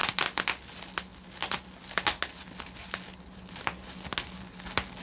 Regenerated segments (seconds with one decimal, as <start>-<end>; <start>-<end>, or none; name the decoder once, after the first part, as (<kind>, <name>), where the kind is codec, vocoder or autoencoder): none